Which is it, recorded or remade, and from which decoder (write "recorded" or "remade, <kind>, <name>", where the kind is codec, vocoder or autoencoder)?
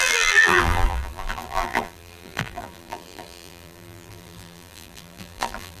remade, vocoder, BigVGAN v2